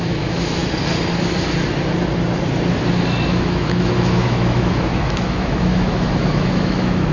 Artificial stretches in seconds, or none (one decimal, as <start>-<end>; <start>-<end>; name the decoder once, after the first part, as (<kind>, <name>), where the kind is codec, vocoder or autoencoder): 0.0-0.6 (autoencoder, DAC-VAE); 3.3-7.1